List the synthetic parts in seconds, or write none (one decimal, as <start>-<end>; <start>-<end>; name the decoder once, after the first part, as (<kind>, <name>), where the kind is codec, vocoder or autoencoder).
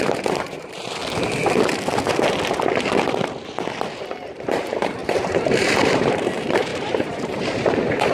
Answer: 0.0-1.0 (vocoder, BigVGAN v2); 4.3-8.1